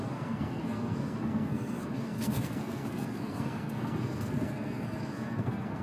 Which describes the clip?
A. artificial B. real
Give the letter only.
A